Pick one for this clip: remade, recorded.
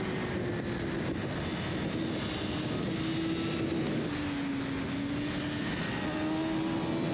recorded